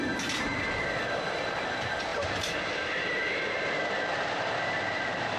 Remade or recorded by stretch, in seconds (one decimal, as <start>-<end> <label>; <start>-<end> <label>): 0.0-5.4 recorded